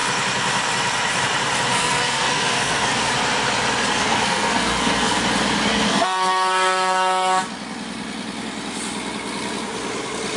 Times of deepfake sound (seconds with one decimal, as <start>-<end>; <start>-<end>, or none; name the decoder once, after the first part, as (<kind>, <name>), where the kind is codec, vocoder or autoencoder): 1.7-2.9 (codec, SNAC); 3.9-5.2; 5.7-7.4